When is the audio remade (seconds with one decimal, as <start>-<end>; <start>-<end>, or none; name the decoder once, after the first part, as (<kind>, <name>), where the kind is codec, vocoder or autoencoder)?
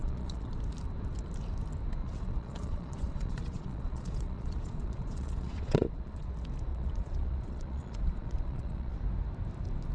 0.0-0.5 (vocoder, Vocos); 2.0-6.3; 6.7-9.0